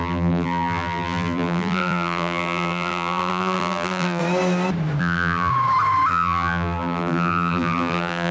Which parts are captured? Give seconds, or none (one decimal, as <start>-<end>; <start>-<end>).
4.2-5.0; 5.5-6.1